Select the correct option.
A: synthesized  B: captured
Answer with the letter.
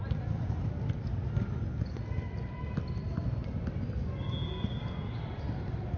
B